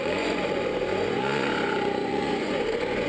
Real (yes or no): no